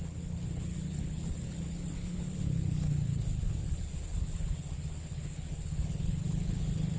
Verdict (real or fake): fake